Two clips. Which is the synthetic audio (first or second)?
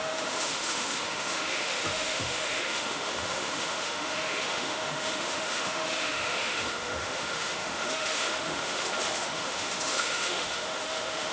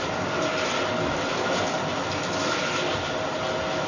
first